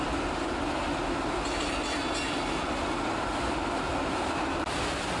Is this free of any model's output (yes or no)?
yes